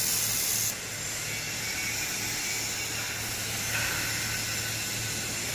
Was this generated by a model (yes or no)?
no